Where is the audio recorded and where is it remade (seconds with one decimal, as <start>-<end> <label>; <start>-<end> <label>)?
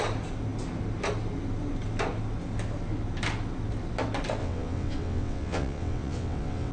0.0-4.4 recorded; 4.4-6.7 remade